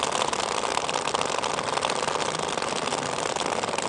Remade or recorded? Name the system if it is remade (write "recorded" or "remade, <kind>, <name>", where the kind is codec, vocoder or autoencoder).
recorded